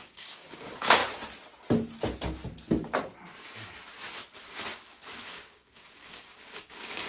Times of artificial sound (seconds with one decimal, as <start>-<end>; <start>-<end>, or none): 0.0-1.0; 5.3-7.1